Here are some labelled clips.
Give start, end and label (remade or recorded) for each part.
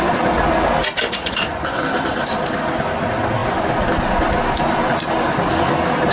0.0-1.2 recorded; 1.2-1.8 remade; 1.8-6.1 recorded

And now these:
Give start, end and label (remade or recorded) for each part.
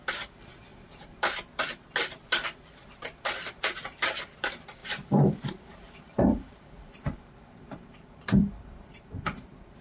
0.0-0.7 recorded; 0.7-1.5 remade; 1.5-4.8 recorded; 4.8-9.8 remade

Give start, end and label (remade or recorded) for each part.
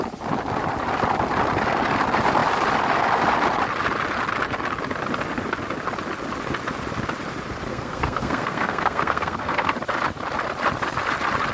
0.0-7.7 recorded; 7.7-9.7 remade; 9.7-11.5 recorded